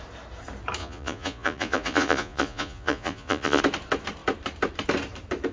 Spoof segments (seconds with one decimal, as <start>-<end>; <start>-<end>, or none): 0.8-3.6